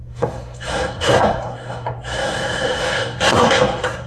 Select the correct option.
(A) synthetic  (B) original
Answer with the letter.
A